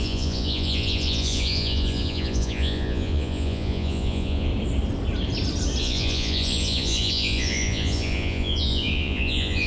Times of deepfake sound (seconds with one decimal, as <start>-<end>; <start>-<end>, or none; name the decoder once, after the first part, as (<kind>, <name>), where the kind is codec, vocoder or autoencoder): 0.0-4.5 (vocoder, Vocos); 5.8-9.7